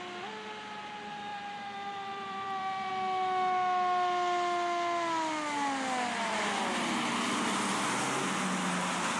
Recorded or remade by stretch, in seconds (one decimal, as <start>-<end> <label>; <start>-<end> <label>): 0.0-1.3 recorded; 1.3-2.9 remade; 2.9-9.2 recorded